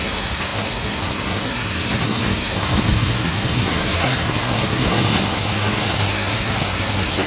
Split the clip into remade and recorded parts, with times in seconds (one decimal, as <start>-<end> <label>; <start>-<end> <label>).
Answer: 0.0-7.3 remade